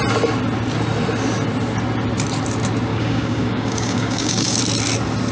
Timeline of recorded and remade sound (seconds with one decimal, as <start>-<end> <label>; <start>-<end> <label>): 0.0-2.9 recorded; 2.9-4.6 remade; 4.6-5.3 recorded

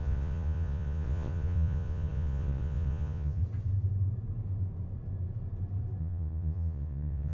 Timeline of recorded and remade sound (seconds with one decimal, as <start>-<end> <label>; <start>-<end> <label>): 0.0-3.4 remade; 3.4-6.0 recorded; 6.0-7.3 remade

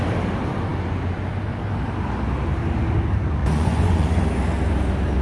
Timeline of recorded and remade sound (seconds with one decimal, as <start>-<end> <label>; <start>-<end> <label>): 0.0-3.4 recorded; 3.4-4.1 remade; 4.1-5.2 recorded

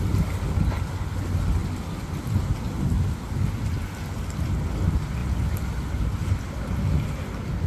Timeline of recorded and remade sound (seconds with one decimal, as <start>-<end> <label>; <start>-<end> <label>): 0.0-7.7 recorded

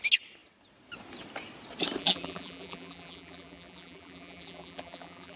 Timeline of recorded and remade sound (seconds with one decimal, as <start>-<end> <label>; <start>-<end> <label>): 0.0-2.0 recorded; 2.0-5.4 remade

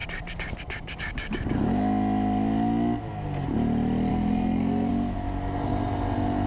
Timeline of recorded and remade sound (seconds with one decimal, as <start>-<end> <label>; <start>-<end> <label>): 0.0-4.1 recorded; 4.1-4.9 remade; 4.9-6.5 recorded

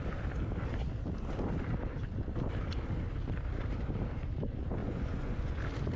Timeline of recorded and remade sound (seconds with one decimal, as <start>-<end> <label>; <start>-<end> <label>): 0.0-4.8 recorded; 4.8-5.6 remade; 5.6-6.0 recorded